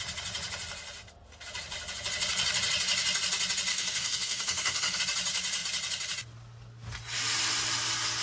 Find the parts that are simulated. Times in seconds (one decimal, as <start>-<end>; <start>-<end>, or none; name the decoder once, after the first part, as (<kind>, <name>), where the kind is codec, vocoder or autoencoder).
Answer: 3.7-5.0 (codec, SNAC)